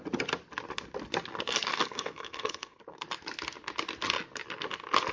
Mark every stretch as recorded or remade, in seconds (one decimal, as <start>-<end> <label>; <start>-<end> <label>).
0.0-1.7 recorded; 1.7-2.8 remade; 2.8-5.1 recorded